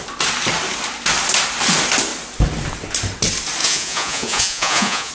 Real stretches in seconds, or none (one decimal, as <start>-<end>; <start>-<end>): 0.0-3.6